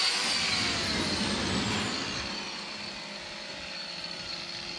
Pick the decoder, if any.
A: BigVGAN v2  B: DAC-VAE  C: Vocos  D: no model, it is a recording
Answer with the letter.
D